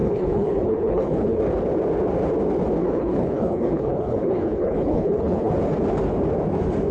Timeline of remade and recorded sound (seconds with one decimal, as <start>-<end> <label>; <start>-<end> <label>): 0.0-1.4 remade; 1.4-2.8 recorded; 2.8-5.5 remade; 5.5-6.9 recorded